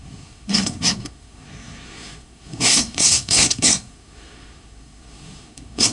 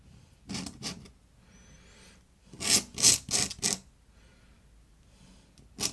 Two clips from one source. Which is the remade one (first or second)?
first